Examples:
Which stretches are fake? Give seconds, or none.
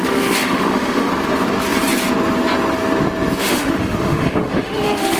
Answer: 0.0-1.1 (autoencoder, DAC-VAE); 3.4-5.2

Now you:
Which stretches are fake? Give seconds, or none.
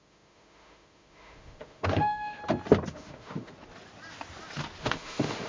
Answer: 0.0-2.4 (autoencoder, DAC-VAE); 2.9-3.5; 4.8-5.5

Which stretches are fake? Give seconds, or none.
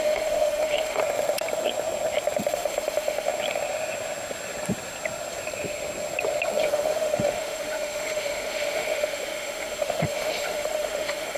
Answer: 0.0-1.0 (autoencoder, DAC-VAE); 2.5-3.3; 6.6-11.4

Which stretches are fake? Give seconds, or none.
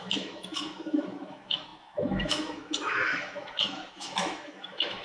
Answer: 0.0-5.0 (autoencoder, DAC-VAE)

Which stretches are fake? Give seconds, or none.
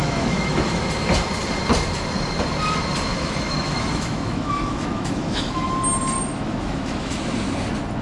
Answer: 0.0-0.8 (autoencoder, DAC-VAE); 3.1-5.7; 6.3-7.1